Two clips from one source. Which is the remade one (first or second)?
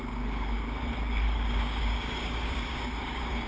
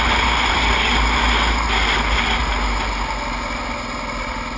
first